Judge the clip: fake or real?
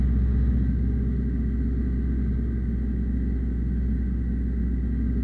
real